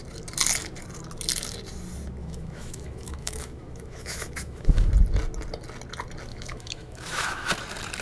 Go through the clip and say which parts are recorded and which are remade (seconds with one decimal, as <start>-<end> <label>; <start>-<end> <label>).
0.0-2.2 recorded; 2.2-4.9 remade; 4.9-6.3 recorded; 6.3-7.5 remade; 7.5-8.0 recorded